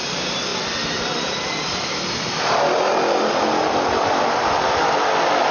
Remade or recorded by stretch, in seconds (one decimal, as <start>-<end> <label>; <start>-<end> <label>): 0.0-0.5 recorded; 0.5-2.4 remade; 2.4-5.5 recorded